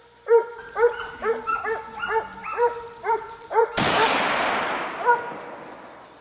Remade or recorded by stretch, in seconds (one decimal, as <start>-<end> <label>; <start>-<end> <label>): 0.0-0.4 recorded; 0.4-1.8 remade; 1.8-2.4 recorded; 2.4-4.9 remade; 4.9-6.2 recorded